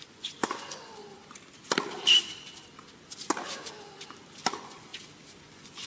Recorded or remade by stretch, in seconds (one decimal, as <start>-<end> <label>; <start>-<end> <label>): 0.0-1.0 remade; 1.0-4.5 recorded; 4.5-4.9 remade; 4.9-5.4 recorded; 5.4-5.9 remade